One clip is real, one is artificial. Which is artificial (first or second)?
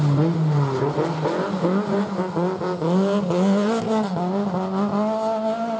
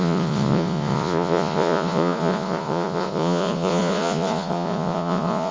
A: second